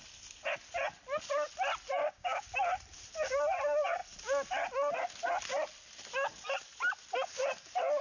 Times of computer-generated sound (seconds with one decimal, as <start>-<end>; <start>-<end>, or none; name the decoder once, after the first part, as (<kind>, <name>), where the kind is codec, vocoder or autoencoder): 2.0-2.5 (codec, DAC)